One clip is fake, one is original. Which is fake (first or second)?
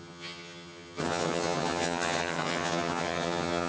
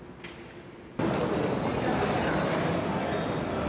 first